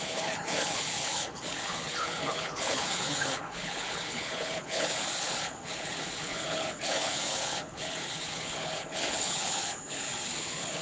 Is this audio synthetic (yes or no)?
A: yes